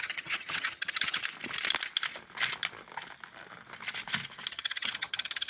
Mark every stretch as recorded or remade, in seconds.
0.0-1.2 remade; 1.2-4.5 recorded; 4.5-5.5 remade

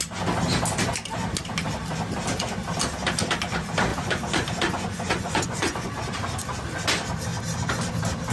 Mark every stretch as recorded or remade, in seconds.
0.0-3.9 recorded; 3.9-5.9 remade; 5.9-8.3 recorded

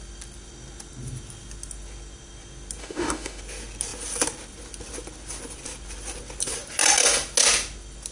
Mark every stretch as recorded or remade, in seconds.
0.0-2.8 recorded; 2.8-3.4 remade; 3.4-8.1 recorded

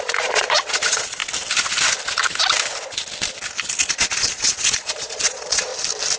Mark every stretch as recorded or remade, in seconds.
0.0-1.2 remade; 1.2-3.8 recorded; 3.8-5.7 remade; 5.7-6.2 recorded

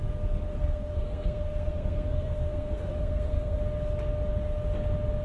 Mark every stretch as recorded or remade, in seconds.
0.0-0.5 recorded; 0.5-3.6 remade; 3.6-5.2 recorded